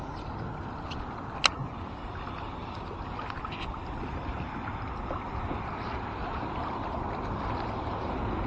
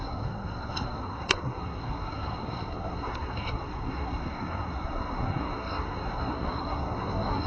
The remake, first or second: second